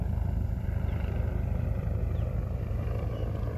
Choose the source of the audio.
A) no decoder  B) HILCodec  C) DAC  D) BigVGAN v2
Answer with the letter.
D